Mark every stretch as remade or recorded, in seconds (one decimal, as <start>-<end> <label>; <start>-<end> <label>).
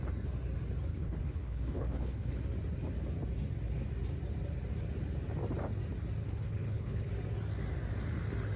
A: 0.0-0.9 recorded; 0.9-2.4 remade; 2.4-6.2 recorded; 6.2-7.1 remade; 7.1-8.6 recorded